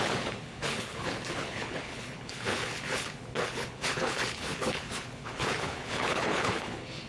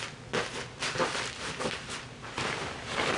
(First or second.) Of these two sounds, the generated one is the first